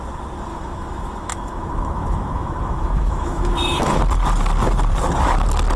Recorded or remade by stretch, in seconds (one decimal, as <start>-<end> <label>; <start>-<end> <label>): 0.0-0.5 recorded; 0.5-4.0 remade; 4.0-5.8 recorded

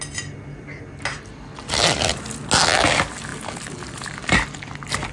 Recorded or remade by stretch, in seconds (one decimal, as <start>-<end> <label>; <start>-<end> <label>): 0.0-5.1 recorded

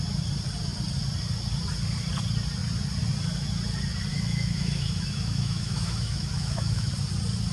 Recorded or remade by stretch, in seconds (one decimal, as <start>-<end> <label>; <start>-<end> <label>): 0.0-4.1 recorded; 4.1-6.9 remade; 6.9-7.5 recorded